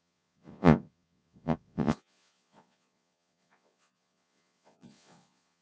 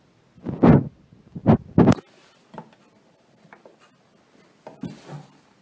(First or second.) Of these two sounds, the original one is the second